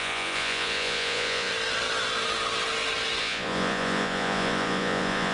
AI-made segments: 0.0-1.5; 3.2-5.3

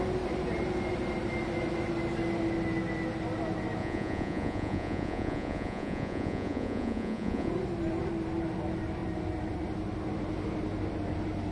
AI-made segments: 3.8-7.5

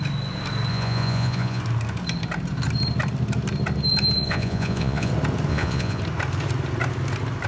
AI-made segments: 0.7-1.6; 4.2-5.1; 5.5-6.0

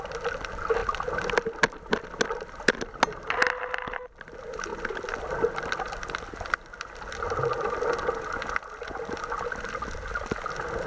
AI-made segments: none